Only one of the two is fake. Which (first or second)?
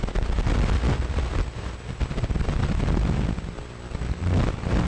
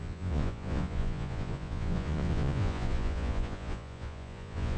second